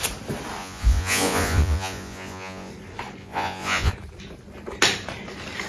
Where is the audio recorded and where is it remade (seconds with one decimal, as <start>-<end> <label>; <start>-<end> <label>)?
0.0-0.6 recorded; 0.6-2.7 remade; 2.7-3.2 recorded; 3.2-3.9 remade; 3.9-5.7 recorded